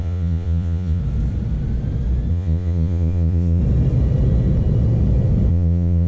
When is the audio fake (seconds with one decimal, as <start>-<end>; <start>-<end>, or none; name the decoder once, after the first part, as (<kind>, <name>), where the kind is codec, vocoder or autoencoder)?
0.0-1.0 (vocoder, Vocos); 2.3-3.6; 5.5-6.1